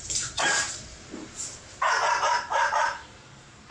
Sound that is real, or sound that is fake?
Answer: fake